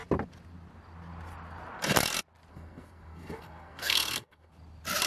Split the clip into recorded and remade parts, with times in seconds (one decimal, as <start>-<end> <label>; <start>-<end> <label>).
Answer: 0.0-2.5 recorded; 2.5-4.5 remade; 4.5-5.1 recorded